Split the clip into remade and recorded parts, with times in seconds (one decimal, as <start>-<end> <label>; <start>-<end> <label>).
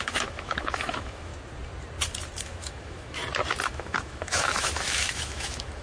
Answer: 0.0-1.3 remade; 1.3-2.4 recorded; 2.4-3.2 remade; 3.2-3.7 recorded; 3.7-5.8 remade